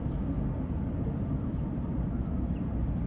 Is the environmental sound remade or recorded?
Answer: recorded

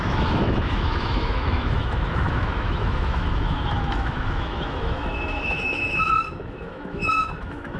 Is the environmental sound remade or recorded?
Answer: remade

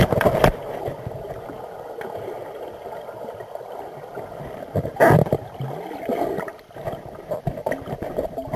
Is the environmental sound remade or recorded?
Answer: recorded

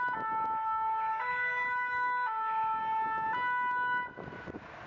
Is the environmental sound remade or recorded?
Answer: recorded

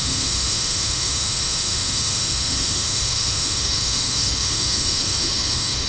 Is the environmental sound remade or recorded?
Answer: remade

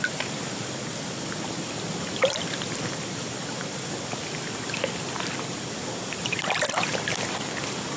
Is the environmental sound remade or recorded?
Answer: recorded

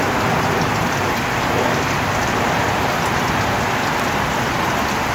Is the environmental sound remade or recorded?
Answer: recorded